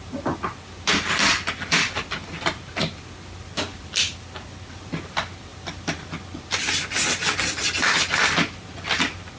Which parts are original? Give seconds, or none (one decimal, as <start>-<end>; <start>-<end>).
0.0-3.7; 4.9-5.5; 6.0-9.4